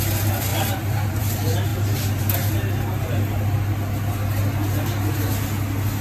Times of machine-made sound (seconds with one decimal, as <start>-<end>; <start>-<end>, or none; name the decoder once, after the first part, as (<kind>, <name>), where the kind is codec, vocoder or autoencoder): none